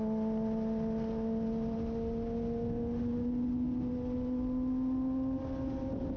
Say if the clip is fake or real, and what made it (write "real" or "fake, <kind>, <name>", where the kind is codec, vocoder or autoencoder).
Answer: real